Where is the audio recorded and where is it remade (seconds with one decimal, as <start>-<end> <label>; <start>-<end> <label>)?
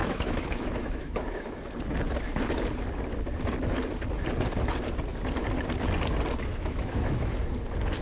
0.0-1.6 remade; 1.6-6.5 recorded; 6.5-7.3 remade; 7.3-8.0 recorded